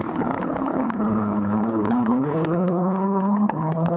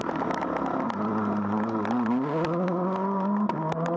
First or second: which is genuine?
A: second